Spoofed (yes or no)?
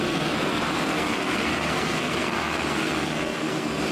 yes